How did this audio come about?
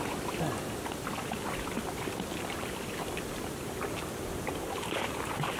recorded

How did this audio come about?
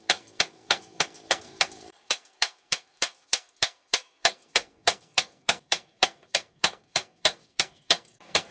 remade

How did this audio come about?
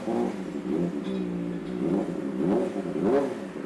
recorded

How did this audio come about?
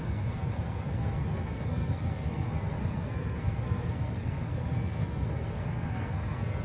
remade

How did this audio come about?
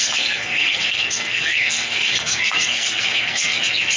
remade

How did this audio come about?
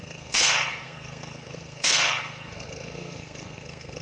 remade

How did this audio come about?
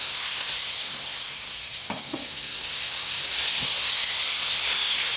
remade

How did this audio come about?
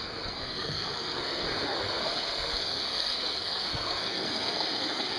remade